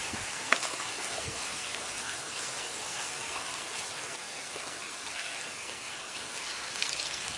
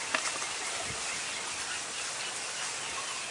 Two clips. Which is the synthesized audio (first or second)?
first